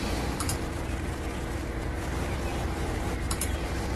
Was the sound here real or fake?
fake